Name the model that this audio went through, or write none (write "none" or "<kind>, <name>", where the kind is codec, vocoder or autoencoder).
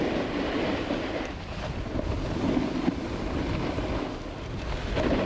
none